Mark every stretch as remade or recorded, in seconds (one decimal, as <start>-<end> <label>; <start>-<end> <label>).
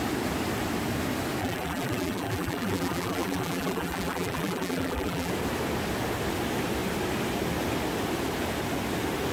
0.0-1.4 recorded; 1.4-5.3 remade; 5.3-9.3 recorded